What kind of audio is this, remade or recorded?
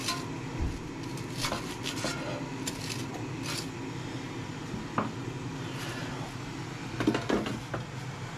recorded